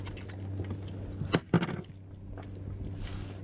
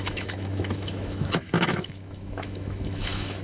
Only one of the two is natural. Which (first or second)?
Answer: first